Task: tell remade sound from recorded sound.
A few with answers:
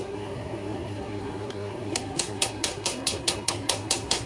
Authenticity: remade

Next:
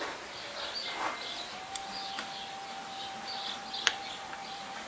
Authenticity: recorded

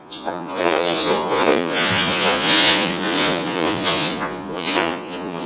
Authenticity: remade